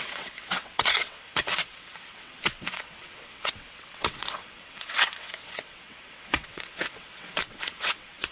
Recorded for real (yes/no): no